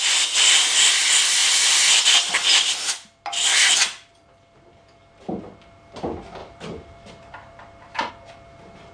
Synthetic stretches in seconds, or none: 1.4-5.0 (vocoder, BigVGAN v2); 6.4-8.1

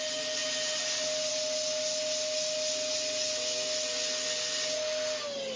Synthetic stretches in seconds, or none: none

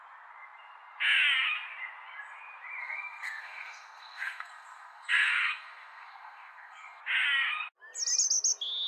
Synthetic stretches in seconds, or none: 2.8-7.0 (codec, SNAC)

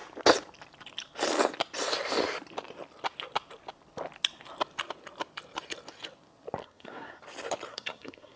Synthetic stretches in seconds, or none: 6.6-7.2 (codec, SNAC); 7.7-8.4

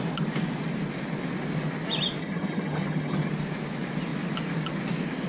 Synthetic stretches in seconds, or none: 2.2-3.3 (vocoder, HiFi-GAN)

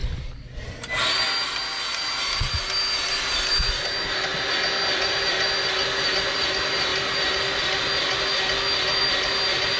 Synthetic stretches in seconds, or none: none

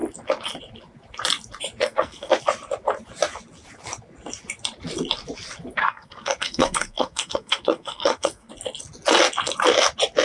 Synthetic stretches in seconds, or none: 1.8-2.3 (codec, SNAC); 5.8-8.5

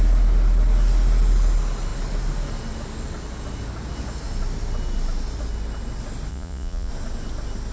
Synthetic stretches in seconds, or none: 6.3-6.9 (vocoder, Vocos)